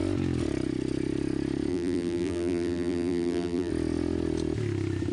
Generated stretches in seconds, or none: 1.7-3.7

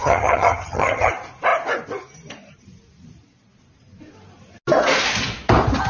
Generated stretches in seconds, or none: 0.0-1.1

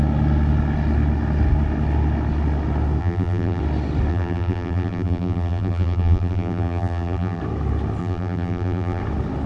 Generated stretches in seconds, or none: 3.0-3.6; 4.1-7.4; 8.0-9.0